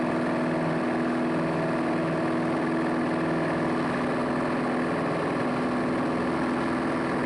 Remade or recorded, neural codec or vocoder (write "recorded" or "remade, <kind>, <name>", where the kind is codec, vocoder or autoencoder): recorded